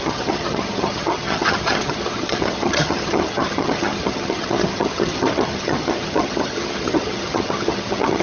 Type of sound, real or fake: fake